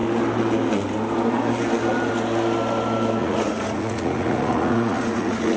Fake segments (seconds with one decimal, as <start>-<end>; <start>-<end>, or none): 3.2-5.6